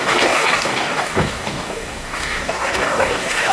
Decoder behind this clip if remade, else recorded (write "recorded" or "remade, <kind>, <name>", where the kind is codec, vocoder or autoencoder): remade, codec, DAC